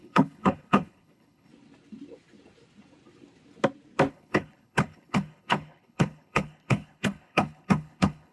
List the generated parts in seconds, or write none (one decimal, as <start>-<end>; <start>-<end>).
0.0-1.5; 4.1-8.3